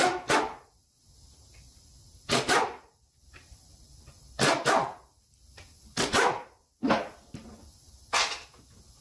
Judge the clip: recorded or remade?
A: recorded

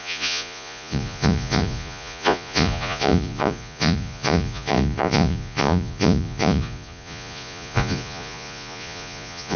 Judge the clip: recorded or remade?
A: remade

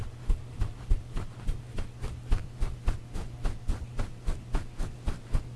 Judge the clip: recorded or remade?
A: recorded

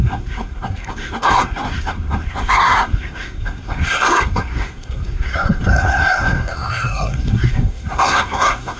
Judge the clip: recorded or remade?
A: remade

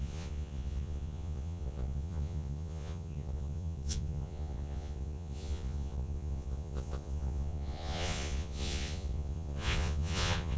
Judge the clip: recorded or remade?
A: remade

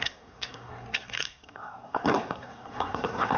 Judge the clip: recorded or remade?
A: remade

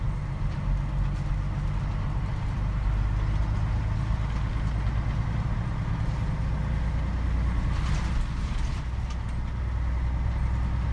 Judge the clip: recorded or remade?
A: recorded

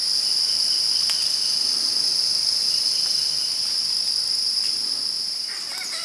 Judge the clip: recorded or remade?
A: recorded